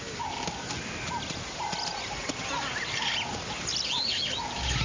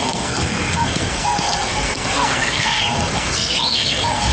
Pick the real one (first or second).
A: first